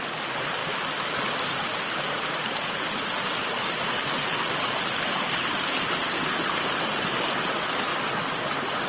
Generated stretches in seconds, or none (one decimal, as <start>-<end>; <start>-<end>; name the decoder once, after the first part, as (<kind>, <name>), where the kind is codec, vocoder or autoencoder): 1.7-6.6 (vocoder, BigVGAN v2)